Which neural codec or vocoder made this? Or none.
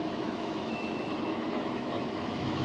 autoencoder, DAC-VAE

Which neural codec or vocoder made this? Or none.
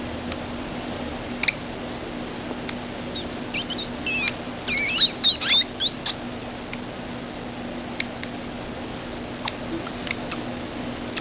none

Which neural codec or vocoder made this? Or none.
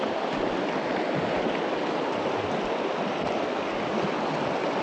none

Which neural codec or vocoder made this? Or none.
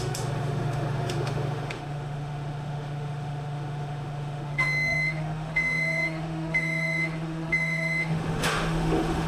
autoencoder, DAC-VAE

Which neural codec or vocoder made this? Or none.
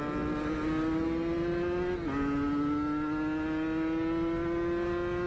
none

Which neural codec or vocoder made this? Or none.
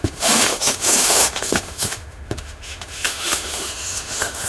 autoencoder, DAC-VAE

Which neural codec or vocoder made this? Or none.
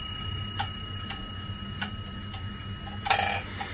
none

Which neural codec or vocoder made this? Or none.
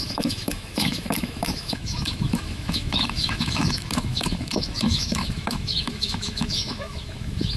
autoencoder, DAC-VAE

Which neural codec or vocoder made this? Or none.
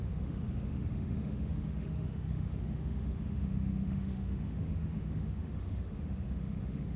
autoencoder, DAC-VAE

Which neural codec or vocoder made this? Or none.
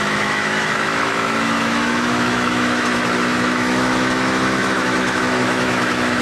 autoencoder, DAC-VAE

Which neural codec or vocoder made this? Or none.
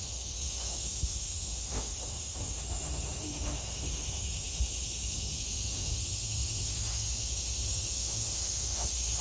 autoencoder, DAC-VAE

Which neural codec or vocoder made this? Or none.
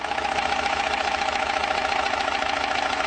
autoencoder, DAC-VAE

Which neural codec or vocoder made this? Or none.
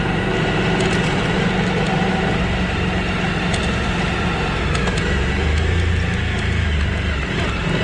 none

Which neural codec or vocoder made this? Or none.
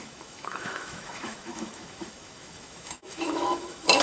autoencoder, DAC-VAE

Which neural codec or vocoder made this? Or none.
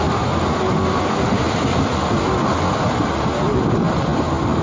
none